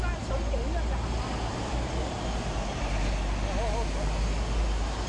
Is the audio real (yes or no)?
yes